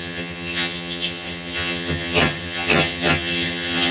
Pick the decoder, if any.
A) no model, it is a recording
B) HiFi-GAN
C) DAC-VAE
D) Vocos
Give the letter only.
B